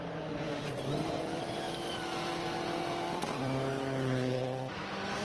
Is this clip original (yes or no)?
yes